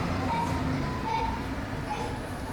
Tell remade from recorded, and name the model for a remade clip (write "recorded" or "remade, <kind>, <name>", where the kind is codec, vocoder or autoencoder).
remade, vocoder, BigVGAN v2